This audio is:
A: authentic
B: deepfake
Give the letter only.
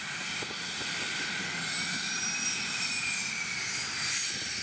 A